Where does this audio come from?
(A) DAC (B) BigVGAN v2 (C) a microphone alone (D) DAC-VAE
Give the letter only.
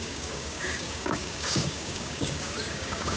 A